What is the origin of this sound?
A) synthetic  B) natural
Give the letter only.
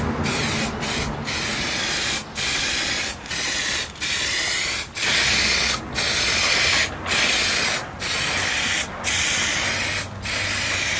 B